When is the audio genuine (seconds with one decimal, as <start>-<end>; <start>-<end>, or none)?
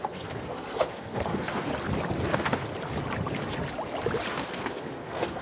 1.7-2.3; 2.7-4.3